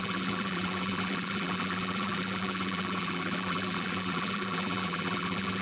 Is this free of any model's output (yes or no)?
no